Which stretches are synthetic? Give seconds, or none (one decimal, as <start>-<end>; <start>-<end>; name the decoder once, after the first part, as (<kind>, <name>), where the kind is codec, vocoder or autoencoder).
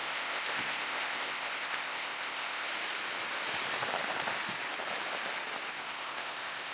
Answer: 0.0-2.7 (codec, ZipCodec); 5.7-6.7